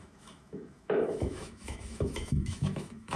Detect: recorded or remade remade